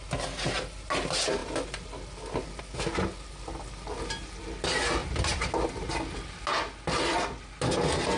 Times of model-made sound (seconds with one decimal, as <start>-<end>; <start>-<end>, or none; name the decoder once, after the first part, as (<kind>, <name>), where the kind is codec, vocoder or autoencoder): none